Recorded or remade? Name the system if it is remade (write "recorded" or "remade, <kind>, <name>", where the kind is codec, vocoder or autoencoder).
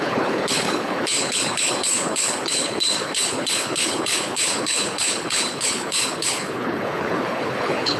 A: remade, codec, HILCodec